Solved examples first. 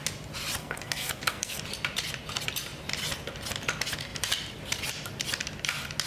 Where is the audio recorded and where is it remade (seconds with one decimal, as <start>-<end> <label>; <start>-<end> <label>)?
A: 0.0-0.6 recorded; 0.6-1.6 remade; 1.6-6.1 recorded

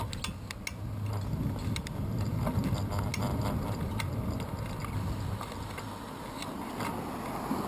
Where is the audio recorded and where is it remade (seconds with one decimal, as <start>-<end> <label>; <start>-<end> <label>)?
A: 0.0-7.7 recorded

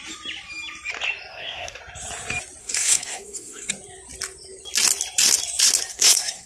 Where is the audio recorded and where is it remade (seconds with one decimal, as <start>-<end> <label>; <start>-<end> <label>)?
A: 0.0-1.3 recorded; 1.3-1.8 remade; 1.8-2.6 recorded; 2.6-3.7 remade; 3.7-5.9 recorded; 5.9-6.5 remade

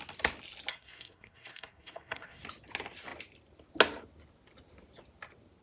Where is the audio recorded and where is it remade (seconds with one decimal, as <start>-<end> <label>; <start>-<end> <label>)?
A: 0.0-0.7 recorded; 0.7-2.4 remade; 2.4-5.6 recorded